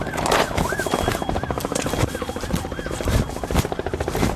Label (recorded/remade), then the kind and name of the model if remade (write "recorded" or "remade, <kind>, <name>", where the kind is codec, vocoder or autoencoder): recorded